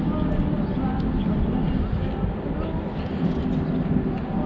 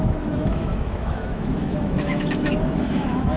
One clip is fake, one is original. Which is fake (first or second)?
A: second